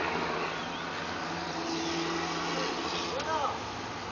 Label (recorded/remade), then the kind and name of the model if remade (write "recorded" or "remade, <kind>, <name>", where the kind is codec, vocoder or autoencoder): recorded